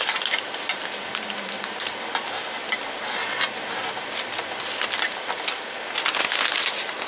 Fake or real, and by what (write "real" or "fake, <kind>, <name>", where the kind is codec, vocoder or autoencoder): real